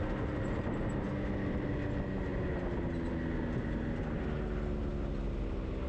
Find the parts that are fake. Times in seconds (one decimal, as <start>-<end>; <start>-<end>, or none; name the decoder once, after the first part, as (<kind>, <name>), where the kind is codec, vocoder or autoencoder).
none